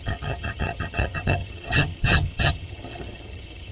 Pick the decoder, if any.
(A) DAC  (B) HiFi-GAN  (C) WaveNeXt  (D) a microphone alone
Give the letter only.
B